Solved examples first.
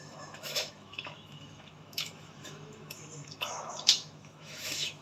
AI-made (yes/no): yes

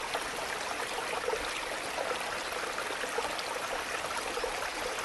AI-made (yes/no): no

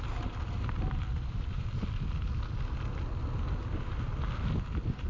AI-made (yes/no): no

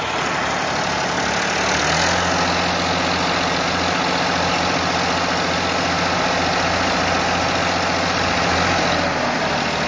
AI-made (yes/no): no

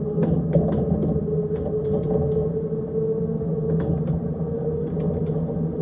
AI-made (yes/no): no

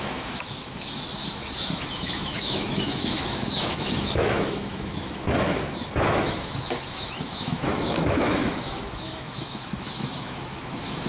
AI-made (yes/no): yes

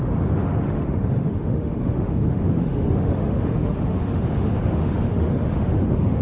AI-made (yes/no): yes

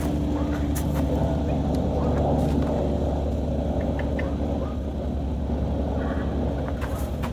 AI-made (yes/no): no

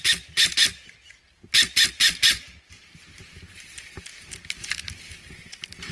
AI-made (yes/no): no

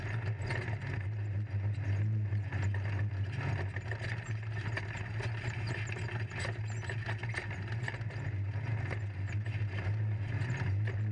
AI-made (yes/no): no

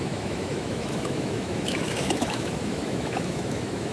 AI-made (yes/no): yes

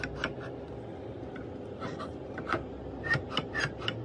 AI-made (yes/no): no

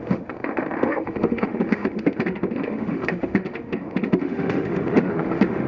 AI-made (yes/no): yes